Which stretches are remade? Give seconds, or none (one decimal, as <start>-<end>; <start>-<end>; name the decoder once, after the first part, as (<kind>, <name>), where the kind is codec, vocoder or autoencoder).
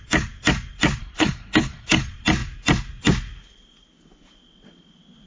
1.0-2.0 (codec, HILCodec)